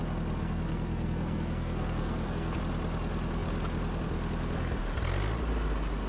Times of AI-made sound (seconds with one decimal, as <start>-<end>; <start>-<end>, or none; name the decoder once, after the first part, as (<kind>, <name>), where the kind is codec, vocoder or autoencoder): 0.4-2.6 (codec, SNAC)